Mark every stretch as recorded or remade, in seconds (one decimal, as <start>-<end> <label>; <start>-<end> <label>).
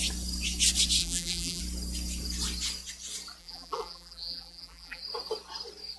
0.0-1.0 recorded; 1.0-1.6 remade; 1.6-3.4 recorded; 3.4-5.0 remade; 5.0-6.0 recorded